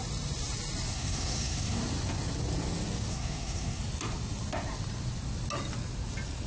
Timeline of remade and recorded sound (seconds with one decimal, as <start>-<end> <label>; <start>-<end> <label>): 0.0-0.9 recorded; 0.9-1.8 remade; 1.8-3.1 recorded; 3.1-3.8 remade; 3.8-6.5 recorded